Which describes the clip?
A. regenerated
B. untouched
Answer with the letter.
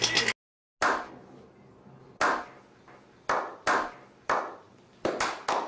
B